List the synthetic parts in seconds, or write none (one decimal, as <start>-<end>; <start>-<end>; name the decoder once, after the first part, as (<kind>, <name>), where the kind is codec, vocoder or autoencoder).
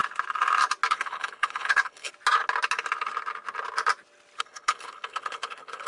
0.9-2.1 (codec, HILCodec); 4.4-5.9